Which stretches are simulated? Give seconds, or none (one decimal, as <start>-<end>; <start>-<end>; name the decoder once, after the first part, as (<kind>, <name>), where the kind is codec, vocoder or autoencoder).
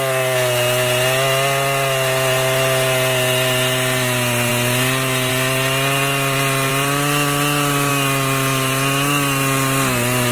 6.7-7.9 (vocoder, BigVGAN v2)